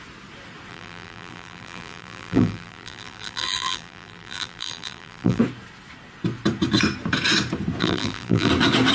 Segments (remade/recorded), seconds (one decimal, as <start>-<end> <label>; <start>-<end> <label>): 0.0-0.7 recorded; 0.7-5.4 remade; 5.4-7.8 recorded; 7.8-8.5 remade; 8.5-8.9 recorded